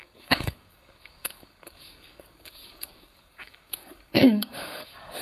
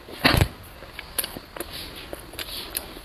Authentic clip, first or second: second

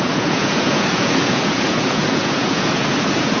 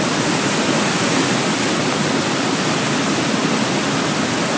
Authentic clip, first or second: second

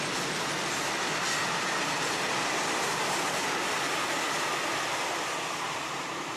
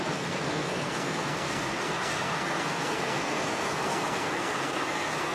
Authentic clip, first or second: first